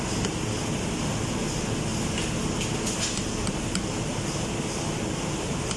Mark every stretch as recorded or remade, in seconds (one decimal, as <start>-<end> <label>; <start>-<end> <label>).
0.0-1.9 remade; 1.9-2.8 recorded; 2.8-4.1 remade; 4.1-5.0 recorded; 5.0-5.8 remade